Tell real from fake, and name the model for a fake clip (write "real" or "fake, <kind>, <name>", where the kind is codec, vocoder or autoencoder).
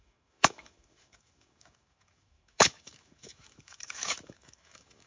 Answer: fake, autoencoder, DAC-VAE